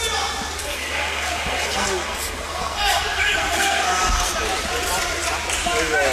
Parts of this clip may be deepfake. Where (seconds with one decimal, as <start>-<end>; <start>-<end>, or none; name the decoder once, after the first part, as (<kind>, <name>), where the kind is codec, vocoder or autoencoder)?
0.6-4.3 (codec, SNAC)